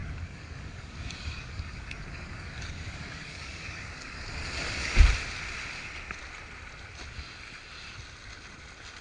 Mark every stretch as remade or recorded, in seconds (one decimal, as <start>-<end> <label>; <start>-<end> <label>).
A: 0.0-4.2 remade; 4.2-9.0 recorded